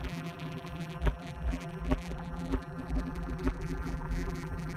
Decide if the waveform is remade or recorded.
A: remade